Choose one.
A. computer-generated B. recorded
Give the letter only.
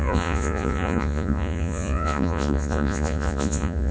A